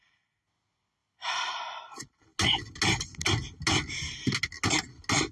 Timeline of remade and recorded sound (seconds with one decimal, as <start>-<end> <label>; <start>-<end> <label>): 0.0-1.0 recorded; 1.0-1.6 remade; 1.6-5.3 recorded